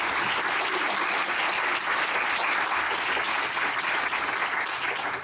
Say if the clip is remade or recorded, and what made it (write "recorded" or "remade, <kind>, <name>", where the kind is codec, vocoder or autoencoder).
recorded